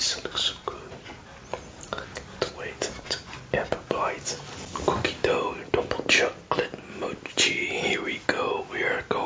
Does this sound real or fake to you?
real